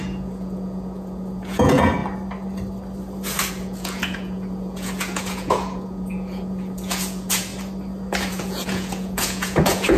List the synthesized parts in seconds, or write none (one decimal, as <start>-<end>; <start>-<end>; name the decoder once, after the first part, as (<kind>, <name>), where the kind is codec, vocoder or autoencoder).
0.0-2.0 (vocoder, Vocos); 3.5-7.5; 8.3-10.0